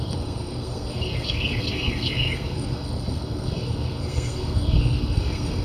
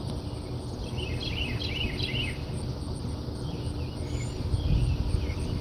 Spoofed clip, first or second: first